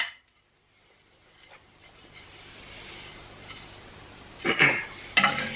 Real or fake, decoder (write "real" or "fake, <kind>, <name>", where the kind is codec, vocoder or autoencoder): real